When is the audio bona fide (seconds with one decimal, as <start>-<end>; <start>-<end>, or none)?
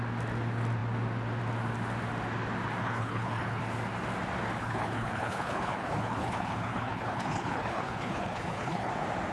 0.0-2.8; 3.6-4.6; 8.9-9.3